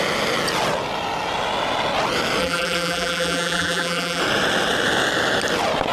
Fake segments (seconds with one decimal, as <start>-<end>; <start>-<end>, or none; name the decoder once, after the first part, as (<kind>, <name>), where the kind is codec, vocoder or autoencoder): 2.4-4.2 (vocoder, BigVGAN v2)